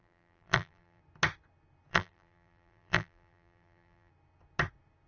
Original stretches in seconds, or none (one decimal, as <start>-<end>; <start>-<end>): 1.0-1.9; 4.1-5.1